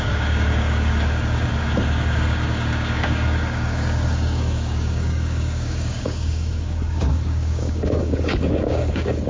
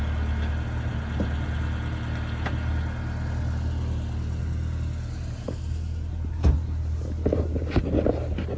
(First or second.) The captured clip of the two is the second